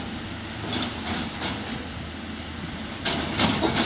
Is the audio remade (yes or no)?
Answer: no